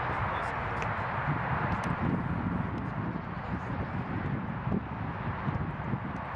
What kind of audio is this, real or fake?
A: real